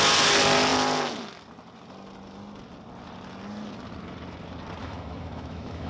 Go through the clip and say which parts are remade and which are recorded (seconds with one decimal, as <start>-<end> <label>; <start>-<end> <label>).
0.0-4.8 recorded; 4.8-5.9 remade